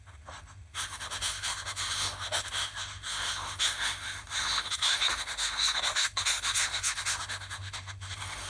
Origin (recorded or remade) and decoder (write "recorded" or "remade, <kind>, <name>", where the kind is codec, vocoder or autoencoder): remade, autoencoder, DAC-VAE